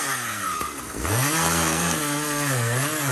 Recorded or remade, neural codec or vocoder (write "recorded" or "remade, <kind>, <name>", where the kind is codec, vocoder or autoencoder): remade, codec, SNAC